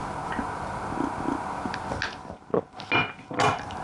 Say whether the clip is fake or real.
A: real